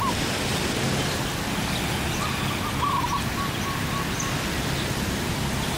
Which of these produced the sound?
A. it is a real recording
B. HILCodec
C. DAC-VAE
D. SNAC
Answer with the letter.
A